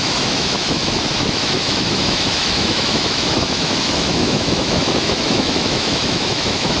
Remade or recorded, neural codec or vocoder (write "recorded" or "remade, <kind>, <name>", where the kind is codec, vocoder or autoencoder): remade, autoencoder, DAC-VAE